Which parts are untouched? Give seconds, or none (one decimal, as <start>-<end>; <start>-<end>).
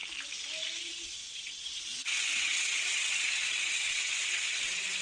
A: 0.0-0.8